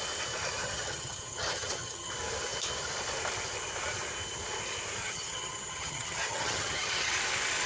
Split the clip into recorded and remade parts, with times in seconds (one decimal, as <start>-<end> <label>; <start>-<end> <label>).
0.0-0.6 recorded; 0.6-2.1 remade; 2.1-5.0 recorded; 5.0-7.1 remade; 7.1-7.7 recorded